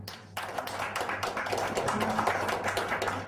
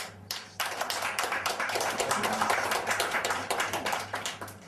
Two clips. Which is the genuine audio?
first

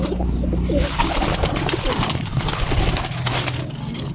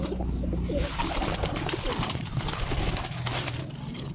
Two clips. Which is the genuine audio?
first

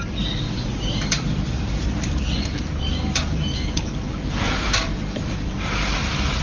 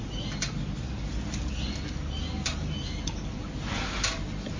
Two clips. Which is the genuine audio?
second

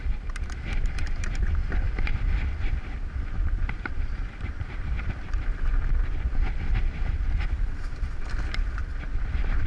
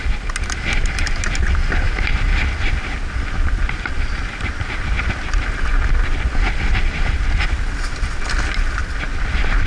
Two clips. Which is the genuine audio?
second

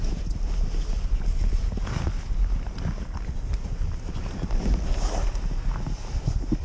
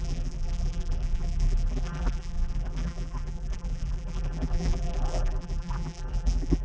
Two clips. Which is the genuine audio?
first